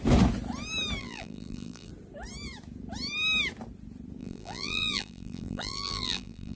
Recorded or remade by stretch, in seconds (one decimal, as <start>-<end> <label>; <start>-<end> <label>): 0.0-1.0 recorded; 1.0-1.9 remade; 1.9-4.2 recorded; 4.2-6.6 remade